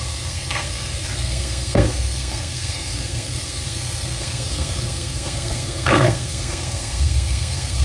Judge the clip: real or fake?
fake